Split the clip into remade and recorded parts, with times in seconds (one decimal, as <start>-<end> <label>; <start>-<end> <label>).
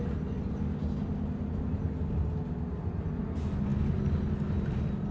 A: 0.0-5.1 recorded